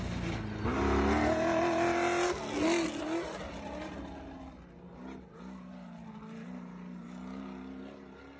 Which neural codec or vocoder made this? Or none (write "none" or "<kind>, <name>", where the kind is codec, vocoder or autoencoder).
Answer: none